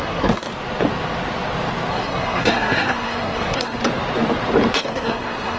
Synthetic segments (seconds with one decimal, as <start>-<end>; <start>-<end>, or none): 0.0-0.5; 1.9-3.8; 4.8-5.6